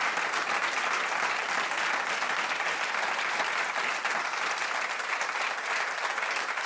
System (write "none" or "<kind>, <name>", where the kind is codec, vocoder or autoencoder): none